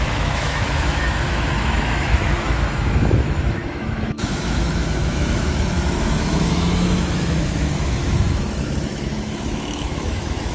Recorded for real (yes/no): no